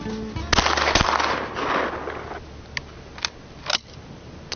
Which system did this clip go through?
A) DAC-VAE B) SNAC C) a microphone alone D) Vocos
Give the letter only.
C